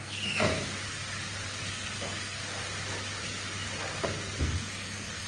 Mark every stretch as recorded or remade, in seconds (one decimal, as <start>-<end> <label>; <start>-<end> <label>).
0.0-0.5 remade; 0.5-1.6 recorded; 1.6-2.4 remade; 2.4-4.4 recorded; 4.4-5.3 remade